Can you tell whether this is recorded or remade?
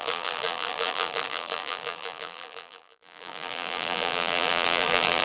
remade